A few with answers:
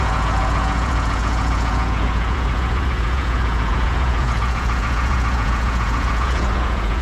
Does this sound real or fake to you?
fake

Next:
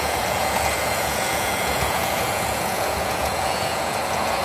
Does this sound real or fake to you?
fake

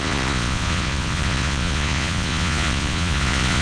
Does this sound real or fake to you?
fake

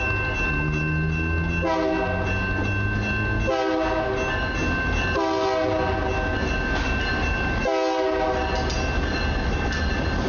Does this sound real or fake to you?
real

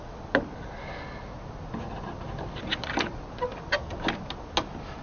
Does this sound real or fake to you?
real